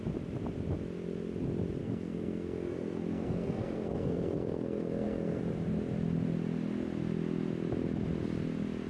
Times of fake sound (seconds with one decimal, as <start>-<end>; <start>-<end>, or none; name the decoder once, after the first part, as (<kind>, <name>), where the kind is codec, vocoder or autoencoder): 1.8-5.4 (codec, SNAC)